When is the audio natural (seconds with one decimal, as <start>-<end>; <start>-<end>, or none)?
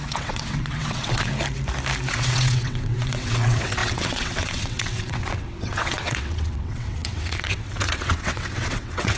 1.3-2.1